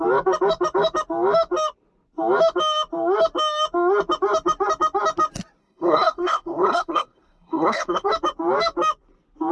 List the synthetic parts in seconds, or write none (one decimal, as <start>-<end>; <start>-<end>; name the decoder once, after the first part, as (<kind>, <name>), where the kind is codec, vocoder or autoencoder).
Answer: 5.6-8.1 (codec, SNAC)